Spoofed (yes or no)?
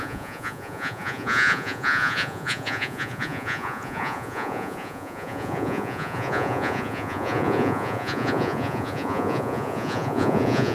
yes